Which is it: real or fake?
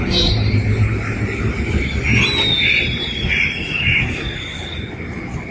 real